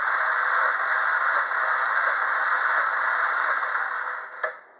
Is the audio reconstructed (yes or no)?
no